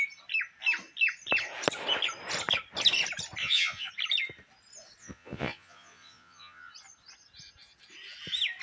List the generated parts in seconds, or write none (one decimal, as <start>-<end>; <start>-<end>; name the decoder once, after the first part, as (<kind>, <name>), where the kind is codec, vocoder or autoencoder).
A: 3.4-3.9 (vocoder, Vocos); 5.0-6.7